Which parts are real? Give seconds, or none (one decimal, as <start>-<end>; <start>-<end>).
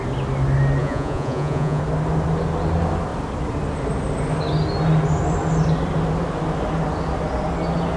0.0-0.8; 1.8-8.0